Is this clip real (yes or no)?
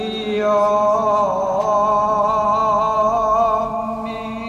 yes